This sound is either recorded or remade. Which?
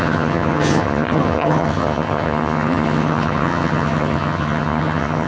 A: remade